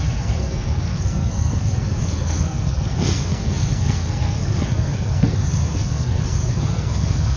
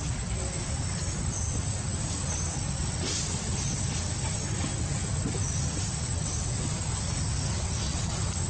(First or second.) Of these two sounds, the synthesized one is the first